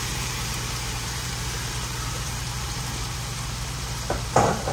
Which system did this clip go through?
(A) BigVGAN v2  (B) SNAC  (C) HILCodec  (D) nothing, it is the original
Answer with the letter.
A